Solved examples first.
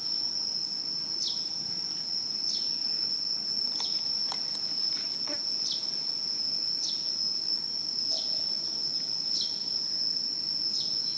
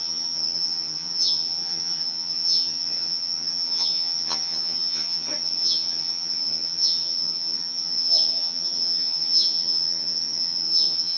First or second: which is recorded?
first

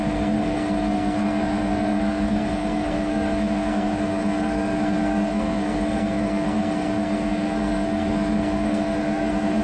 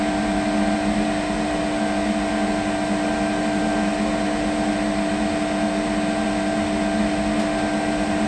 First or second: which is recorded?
second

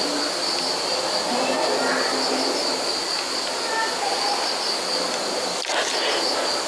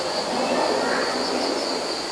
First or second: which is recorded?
first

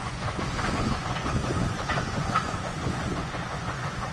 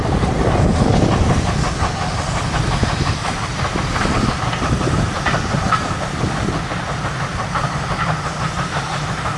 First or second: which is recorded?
second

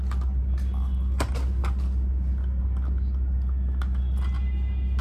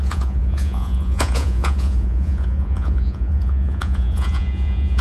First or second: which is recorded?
first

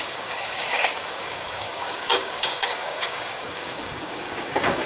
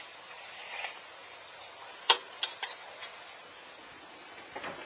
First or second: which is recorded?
second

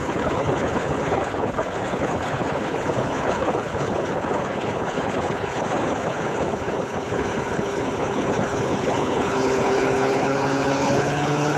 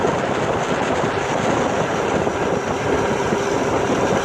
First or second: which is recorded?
second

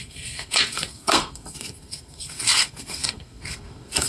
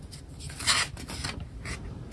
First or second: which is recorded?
second